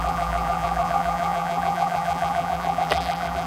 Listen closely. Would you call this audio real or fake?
fake